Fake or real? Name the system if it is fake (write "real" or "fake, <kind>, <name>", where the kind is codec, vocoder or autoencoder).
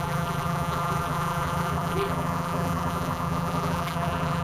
fake, vocoder, BigVGAN v2